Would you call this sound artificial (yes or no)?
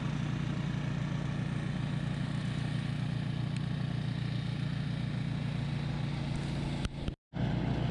no